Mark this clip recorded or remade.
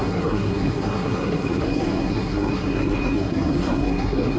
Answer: remade